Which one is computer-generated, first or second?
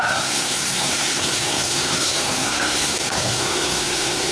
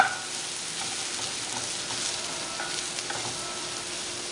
first